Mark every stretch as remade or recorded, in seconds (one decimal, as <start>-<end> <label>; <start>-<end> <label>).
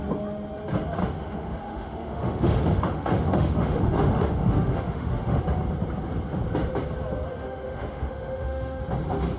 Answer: 0.0-1.0 recorded; 1.0-5.4 remade; 5.4-7.3 recorded; 7.3-8.8 remade; 8.8-9.4 recorded